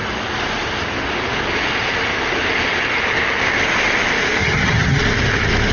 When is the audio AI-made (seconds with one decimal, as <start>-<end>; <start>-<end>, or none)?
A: 4.4-5.0